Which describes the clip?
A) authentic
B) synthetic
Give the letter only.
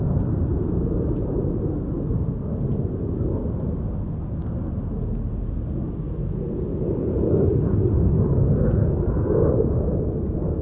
A